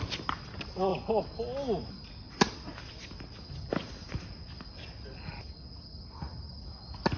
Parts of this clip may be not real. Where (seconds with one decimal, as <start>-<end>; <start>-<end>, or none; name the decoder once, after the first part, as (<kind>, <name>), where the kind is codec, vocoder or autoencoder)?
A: none